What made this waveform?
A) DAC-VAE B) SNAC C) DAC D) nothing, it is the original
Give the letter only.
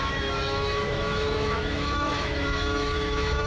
A